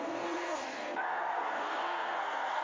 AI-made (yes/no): yes